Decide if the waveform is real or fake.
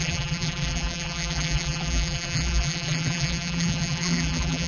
fake